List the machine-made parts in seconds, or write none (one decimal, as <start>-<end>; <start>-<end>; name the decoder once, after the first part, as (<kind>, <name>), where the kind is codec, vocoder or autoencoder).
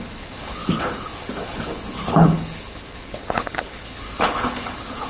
0.0-5.1 (codec, HILCodec)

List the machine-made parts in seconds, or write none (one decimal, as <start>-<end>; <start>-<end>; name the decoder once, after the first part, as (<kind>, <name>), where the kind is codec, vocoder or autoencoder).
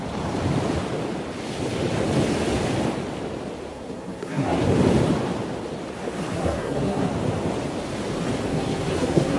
3.7-4.6 (codec, SNAC); 6.3-7.1; 8.5-9.4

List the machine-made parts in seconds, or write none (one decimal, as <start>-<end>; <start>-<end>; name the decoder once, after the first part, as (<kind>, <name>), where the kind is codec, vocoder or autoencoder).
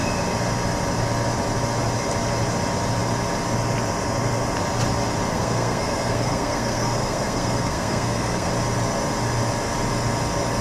5.3-8.5 (codec, SNAC)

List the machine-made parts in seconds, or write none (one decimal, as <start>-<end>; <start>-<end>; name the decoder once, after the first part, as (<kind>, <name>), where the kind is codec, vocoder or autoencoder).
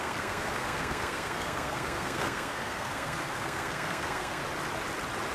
0.0-4.4 (codec, SNAC)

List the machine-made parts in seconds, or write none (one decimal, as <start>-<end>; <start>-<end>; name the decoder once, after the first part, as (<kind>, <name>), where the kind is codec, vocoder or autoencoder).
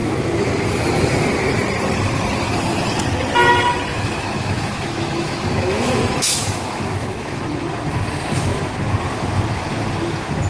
0.0-0.5 (autoencoder, DAC-VAE); 3.9-7.4